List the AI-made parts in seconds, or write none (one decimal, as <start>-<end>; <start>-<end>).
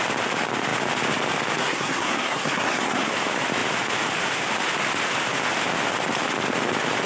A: 1.6-3.1